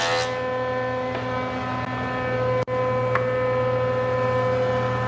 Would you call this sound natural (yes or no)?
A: yes